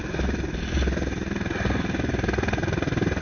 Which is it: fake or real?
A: real